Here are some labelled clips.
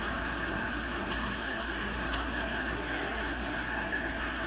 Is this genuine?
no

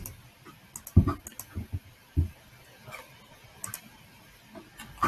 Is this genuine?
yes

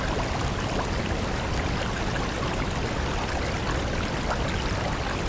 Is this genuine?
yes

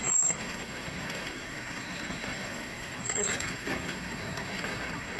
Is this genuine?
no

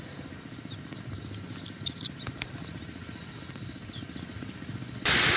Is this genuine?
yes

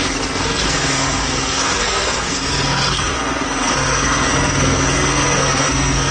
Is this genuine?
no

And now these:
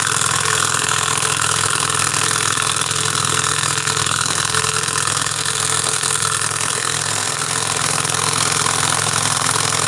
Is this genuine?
no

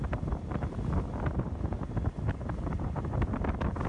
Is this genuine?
yes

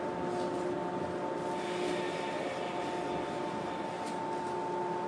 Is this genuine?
yes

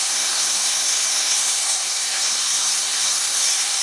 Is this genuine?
no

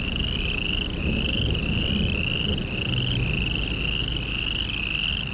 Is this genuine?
yes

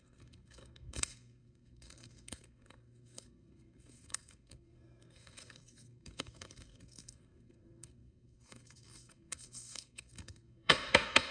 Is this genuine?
no